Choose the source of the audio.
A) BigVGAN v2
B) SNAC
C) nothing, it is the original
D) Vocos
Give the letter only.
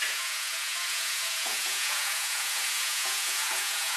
D